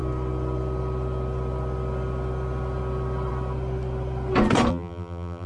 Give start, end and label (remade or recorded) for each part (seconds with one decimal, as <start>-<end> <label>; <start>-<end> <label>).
0.0-4.7 recorded; 4.7-5.5 remade